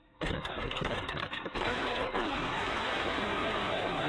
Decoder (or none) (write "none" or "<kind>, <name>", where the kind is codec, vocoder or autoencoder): codec, SNAC